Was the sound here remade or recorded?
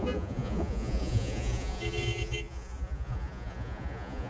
remade